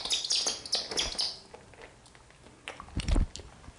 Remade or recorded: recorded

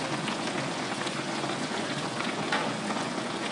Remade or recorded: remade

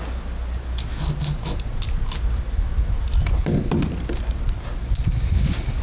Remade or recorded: recorded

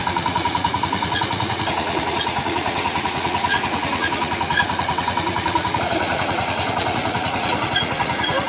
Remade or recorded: remade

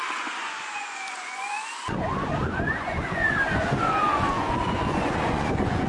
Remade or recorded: remade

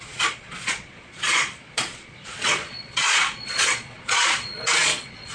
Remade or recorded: remade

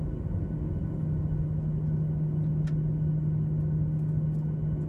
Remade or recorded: recorded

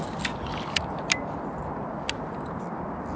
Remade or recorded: recorded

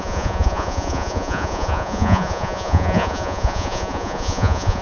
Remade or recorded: remade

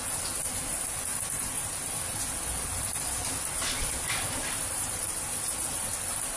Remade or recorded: recorded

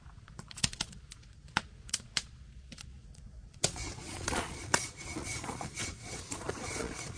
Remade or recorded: remade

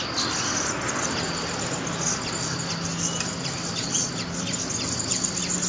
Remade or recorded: recorded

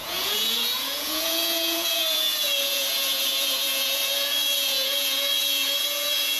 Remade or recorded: remade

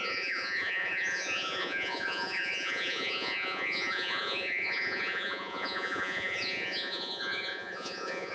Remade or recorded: remade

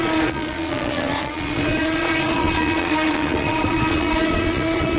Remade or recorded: remade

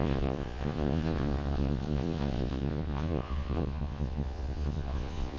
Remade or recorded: remade